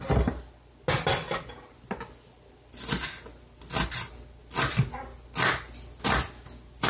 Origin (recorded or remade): recorded